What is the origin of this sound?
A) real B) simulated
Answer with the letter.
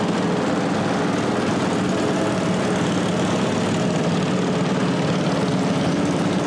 A